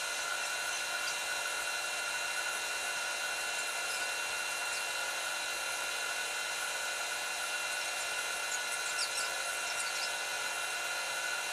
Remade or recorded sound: recorded